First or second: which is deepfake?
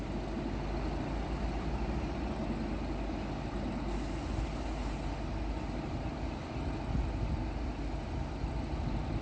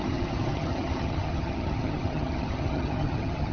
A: second